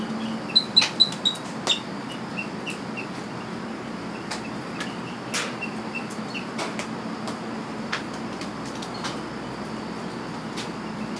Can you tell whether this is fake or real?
real